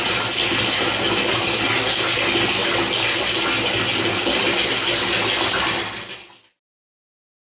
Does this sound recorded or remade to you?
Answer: recorded